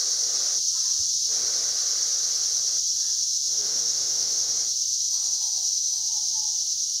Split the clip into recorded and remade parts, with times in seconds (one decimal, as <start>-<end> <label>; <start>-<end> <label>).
0.0-3.3 recorded; 3.3-4.5 remade; 4.5-4.9 recorded; 4.9-6.0 remade; 6.0-7.0 recorded